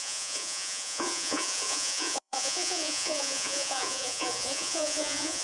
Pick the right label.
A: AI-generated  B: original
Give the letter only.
A